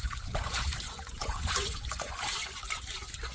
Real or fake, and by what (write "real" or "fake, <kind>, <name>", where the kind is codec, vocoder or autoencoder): fake, vocoder, Vocos